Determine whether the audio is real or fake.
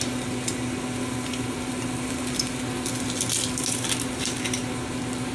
real